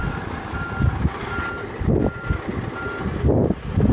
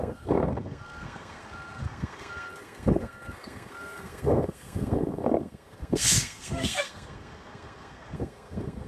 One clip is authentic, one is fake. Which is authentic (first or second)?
first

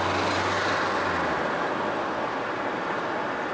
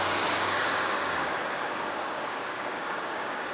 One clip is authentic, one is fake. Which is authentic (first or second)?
first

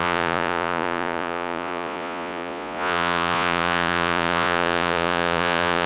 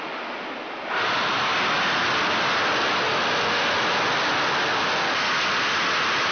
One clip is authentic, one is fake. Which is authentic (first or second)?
second